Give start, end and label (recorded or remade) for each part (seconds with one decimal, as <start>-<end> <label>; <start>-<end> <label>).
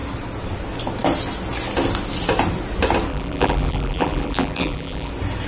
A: 0.0-3.1 recorded; 3.1-5.1 remade; 5.1-5.5 recorded